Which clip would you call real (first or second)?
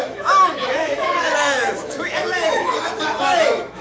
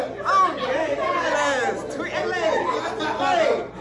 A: second